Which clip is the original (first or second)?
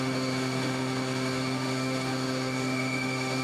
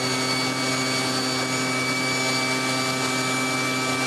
second